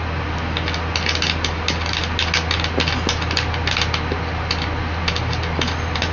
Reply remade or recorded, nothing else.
recorded